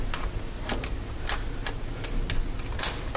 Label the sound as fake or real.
real